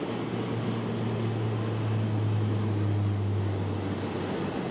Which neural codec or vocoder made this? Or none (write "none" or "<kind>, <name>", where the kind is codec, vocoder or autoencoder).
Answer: none